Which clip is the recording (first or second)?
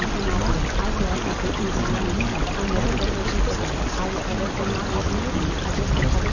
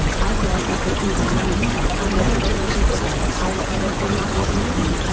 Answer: first